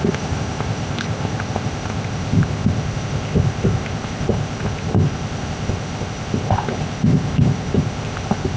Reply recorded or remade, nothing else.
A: remade